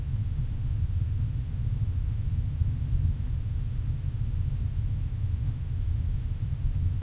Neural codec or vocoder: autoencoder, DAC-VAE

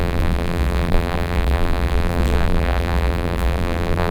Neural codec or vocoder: vocoder, BigVGAN v2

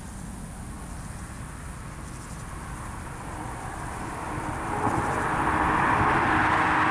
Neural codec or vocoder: none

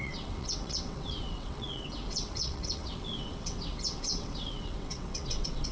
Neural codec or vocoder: vocoder, WaveNeXt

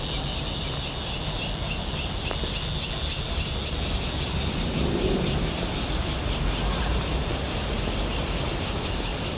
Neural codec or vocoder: none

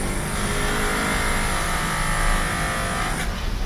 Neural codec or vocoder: none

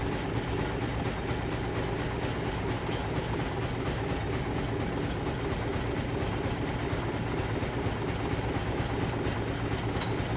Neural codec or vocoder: none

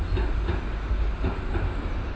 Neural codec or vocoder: none